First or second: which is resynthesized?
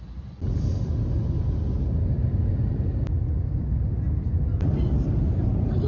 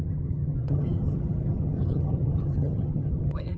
second